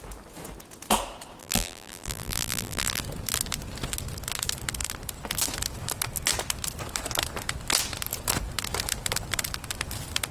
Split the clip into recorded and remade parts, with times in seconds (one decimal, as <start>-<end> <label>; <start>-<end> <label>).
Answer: 0.0-1.4 recorded; 1.4-3.0 remade; 3.0-10.3 recorded